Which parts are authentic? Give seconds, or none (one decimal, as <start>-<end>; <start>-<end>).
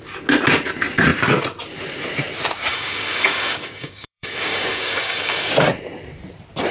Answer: 0.0-2.7; 5.5-6.7